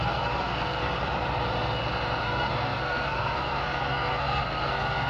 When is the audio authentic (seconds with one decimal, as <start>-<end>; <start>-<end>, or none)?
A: 0.9-2.2